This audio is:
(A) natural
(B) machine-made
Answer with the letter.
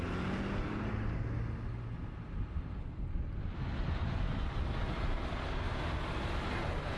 A